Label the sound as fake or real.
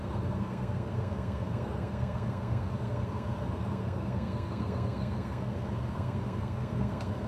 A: fake